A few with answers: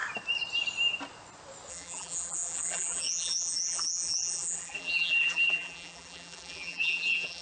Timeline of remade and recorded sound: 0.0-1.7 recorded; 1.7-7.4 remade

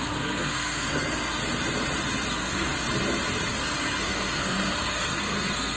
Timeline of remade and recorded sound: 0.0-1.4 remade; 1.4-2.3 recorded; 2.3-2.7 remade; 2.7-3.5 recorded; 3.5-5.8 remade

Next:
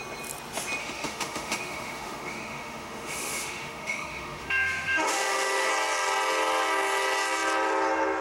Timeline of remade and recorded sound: 0.0-0.8 recorded; 0.8-5.7 remade; 5.7-8.2 recorded

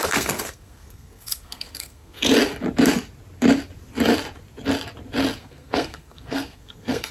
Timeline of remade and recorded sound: 0.0-2.3 remade; 2.3-5.4 recorded; 5.4-7.1 remade